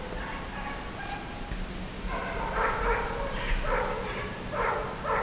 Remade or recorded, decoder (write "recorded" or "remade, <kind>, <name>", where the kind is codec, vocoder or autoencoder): recorded